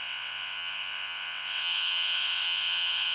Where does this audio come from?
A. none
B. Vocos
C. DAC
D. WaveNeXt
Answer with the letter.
D